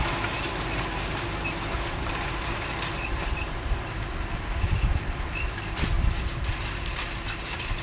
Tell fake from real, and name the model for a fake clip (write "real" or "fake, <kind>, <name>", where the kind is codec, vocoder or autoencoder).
fake, vocoder, BigVGAN v2